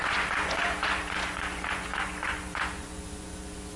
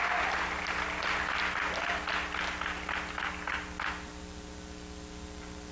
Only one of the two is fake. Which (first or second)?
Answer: first